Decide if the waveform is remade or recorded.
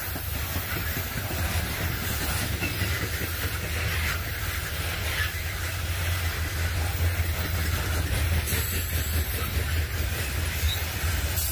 recorded